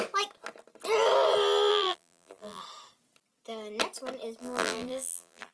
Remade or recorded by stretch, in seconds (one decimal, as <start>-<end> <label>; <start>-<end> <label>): 0.0-1.7 recorded; 1.7-2.6 remade; 2.6-4.4 recorded; 4.4-5.5 remade